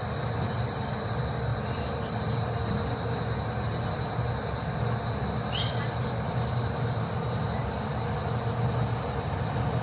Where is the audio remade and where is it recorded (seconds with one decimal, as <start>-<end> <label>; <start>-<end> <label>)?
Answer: 0.0-9.8 recorded